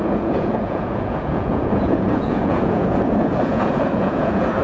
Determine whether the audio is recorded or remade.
remade